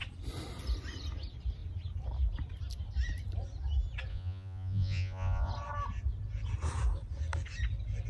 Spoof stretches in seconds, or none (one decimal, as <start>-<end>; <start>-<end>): 4.1-5.5